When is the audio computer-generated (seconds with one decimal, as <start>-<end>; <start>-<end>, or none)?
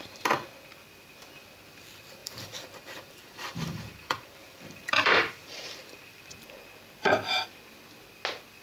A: 2.2-6.3